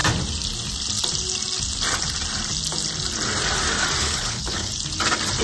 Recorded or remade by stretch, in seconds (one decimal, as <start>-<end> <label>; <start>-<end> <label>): 0.0-4.0 recorded; 4.0-4.7 remade; 4.7-5.4 recorded